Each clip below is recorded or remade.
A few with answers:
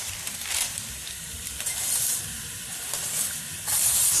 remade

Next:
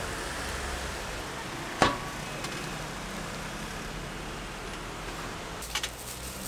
recorded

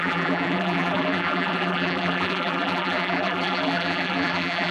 remade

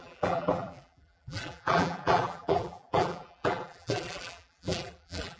remade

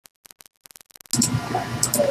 recorded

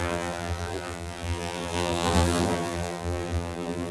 remade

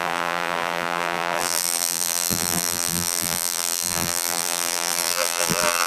remade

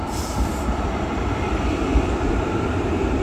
remade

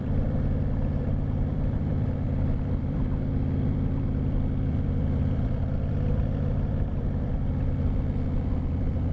remade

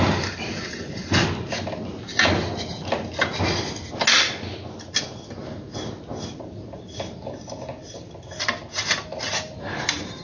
recorded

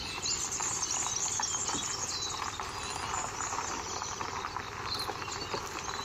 remade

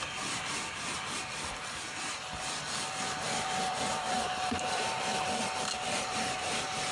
remade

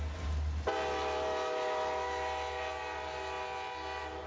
recorded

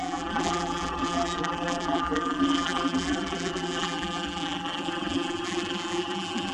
remade